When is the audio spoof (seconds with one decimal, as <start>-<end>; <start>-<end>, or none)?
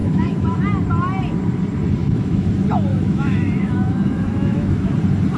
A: 0.0-0.6; 2.0-2.5; 2.9-4.9